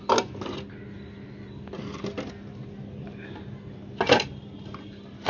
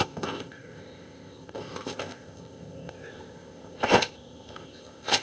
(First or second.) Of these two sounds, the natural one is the first